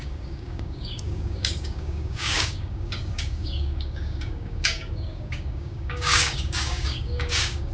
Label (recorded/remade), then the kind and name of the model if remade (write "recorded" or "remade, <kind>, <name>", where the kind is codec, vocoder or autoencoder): remade, codec, DAC